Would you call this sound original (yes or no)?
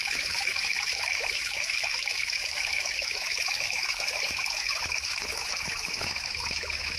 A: no